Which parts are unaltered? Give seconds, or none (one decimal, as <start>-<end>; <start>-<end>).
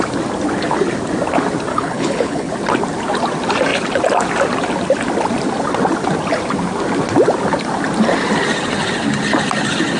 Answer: 0.0-1.7; 2.5-10.0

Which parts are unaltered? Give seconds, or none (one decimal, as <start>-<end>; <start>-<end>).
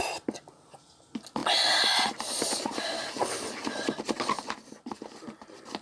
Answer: 0.0-5.8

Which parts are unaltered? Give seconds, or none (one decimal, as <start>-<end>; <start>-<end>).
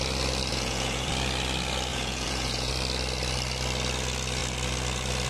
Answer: 0.0-0.5; 1.1-1.9; 2.7-5.3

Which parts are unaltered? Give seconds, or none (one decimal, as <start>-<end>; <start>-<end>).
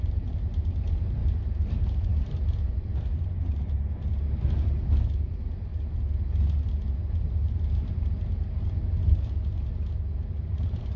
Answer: 2.9-5.1; 5.7-6.7; 8.8-10.4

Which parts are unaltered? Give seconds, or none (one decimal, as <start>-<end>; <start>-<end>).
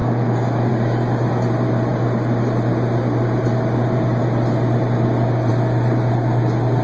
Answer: 0.7-6.8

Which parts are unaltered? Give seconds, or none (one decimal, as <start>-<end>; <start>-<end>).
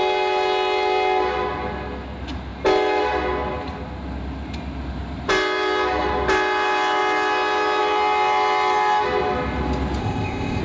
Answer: 0.0-10.0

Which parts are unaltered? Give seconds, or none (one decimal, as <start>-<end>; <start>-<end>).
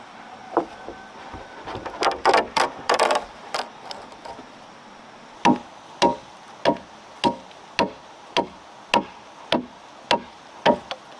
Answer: 0.0-0.4; 4.7-11.2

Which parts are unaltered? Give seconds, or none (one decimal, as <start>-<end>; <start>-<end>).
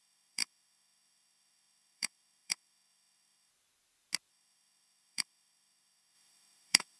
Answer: 3.5-4.3